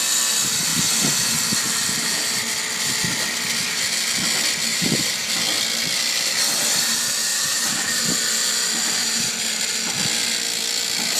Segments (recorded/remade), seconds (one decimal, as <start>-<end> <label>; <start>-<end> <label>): 0.0-4.7 recorded; 4.7-5.3 remade; 5.3-7.3 recorded; 7.3-8.0 remade; 8.0-9.0 recorded; 9.0-9.6 remade; 9.6-11.2 recorded